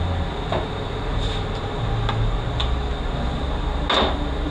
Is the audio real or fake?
real